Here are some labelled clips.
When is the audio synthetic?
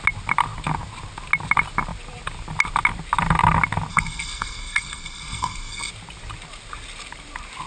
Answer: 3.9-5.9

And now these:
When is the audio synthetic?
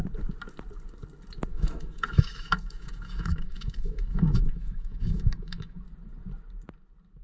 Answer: 1.5-5.8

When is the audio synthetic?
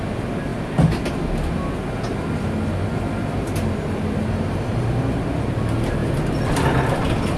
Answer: none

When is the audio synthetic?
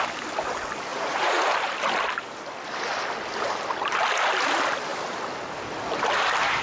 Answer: 0.9-1.4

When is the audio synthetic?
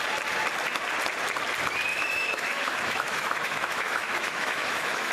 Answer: 1.9-5.1